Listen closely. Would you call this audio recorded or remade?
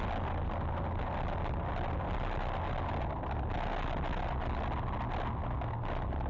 recorded